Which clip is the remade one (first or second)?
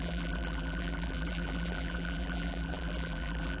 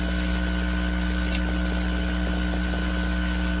first